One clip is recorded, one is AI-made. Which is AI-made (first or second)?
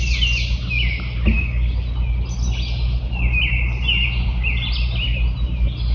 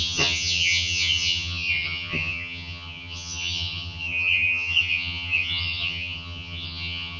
second